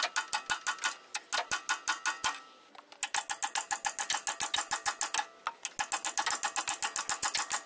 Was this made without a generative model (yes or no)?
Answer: yes